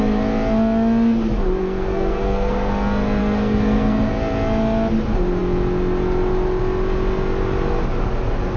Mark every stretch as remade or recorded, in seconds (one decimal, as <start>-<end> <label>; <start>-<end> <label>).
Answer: 0.0-1.6 recorded; 1.6-2.7 remade; 2.7-3.2 recorded; 3.2-4.1 remade; 4.1-8.6 recorded